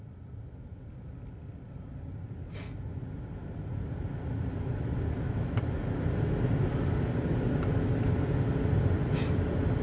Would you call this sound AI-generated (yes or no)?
no